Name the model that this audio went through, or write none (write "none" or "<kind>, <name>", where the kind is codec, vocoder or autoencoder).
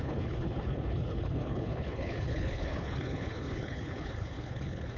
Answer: codec, HILCodec